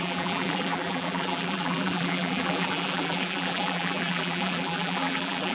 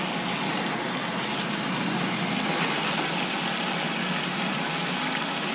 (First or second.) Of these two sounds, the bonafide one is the second